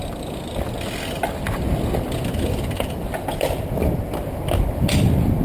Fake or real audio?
real